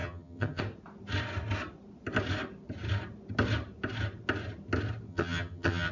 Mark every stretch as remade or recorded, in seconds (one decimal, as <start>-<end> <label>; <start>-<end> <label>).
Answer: 0.0-0.6 remade; 0.6-5.1 recorded; 5.1-5.9 remade